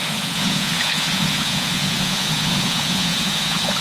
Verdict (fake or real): fake